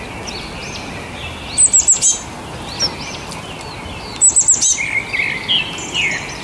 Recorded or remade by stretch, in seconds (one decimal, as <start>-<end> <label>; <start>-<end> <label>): 0.0-6.4 recorded